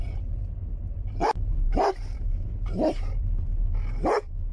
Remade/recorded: remade